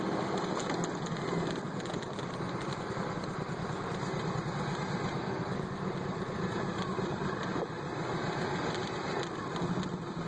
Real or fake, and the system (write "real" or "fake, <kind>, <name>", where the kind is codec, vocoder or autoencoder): real